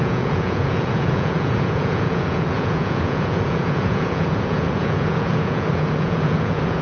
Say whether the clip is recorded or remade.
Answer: remade